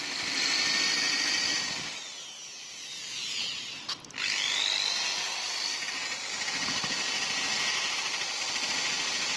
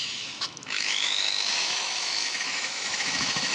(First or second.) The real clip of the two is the first